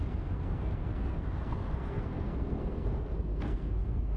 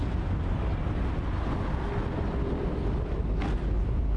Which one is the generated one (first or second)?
first